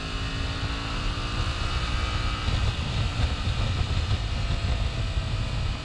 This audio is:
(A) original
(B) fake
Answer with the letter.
A